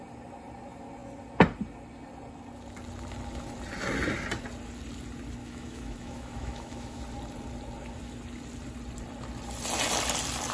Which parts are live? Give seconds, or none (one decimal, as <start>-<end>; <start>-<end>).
0.0-5.4; 7.0-10.5